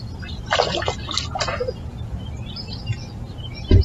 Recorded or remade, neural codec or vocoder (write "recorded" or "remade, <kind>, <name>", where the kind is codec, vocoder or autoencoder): recorded